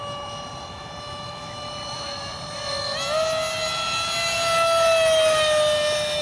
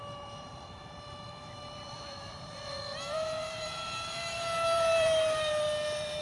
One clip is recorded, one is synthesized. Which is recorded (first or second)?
first